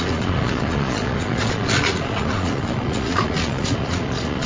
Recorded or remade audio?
remade